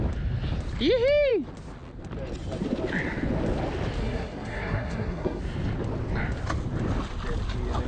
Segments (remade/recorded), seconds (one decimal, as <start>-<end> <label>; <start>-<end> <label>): 0.0-4.0 recorded; 4.0-5.4 remade; 5.4-7.9 recorded